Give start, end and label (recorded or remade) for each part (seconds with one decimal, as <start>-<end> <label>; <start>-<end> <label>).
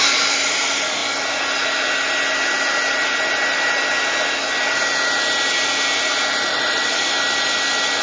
0.0-6.5 recorded; 6.5-7.0 remade; 7.0-8.0 recorded